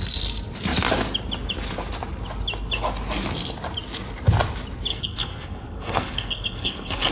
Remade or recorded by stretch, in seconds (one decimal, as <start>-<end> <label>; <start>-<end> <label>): 0.0-4.9 recorded; 4.9-7.1 remade